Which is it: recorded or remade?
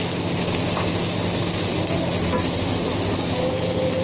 recorded